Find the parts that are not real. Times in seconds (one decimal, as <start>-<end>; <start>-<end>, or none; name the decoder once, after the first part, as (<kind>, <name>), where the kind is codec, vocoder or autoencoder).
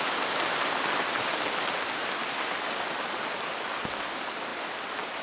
none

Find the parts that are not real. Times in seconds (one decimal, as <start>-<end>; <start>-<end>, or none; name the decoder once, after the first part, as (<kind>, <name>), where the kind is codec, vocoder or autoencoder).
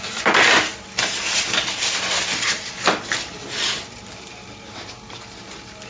none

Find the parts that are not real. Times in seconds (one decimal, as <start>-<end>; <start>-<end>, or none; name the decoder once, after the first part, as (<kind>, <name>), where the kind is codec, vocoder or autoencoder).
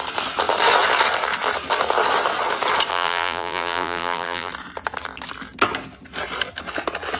2.9-4.5 (vocoder, BigVGAN v2)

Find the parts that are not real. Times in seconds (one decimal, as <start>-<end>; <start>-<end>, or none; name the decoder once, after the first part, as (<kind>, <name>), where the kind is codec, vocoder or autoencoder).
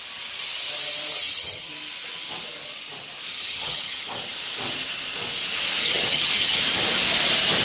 1.1-1.7 (vocoder, HiFi-GAN); 3.3-4.0; 5.8-6.6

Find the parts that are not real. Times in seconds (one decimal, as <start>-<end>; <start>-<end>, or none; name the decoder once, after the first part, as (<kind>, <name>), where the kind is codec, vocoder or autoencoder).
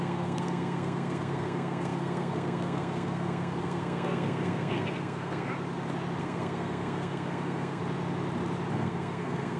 0.0-5.5 (codec, SNAC); 6.2-7.8; 8.7-9.6